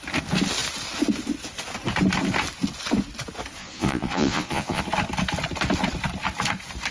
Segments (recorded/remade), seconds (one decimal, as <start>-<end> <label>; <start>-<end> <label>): 0.0-3.6 recorded; 3.6-4.8 remade; 4.8-6.9 recorded